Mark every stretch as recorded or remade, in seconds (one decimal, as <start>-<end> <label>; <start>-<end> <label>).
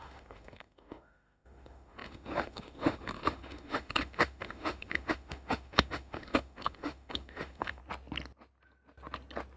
0.0-7.8 remade; 7.8-9.6 recorded